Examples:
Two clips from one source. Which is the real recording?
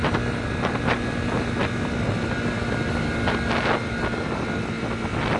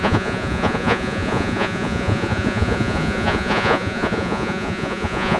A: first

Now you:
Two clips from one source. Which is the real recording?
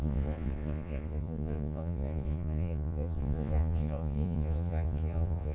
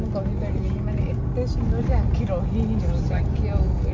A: second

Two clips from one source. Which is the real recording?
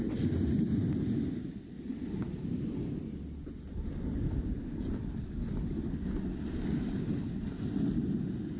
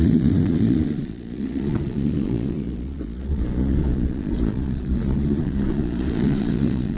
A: first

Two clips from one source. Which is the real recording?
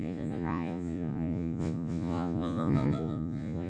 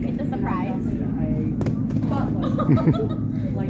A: second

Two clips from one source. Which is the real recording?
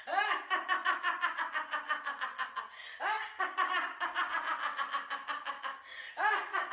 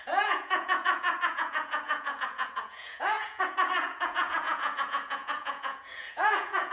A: first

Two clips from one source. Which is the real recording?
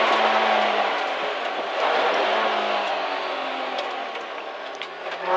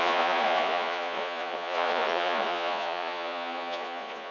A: first